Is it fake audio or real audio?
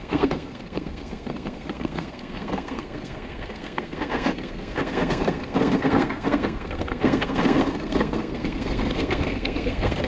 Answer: fake